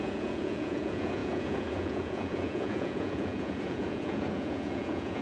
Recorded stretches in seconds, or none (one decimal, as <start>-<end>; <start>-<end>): none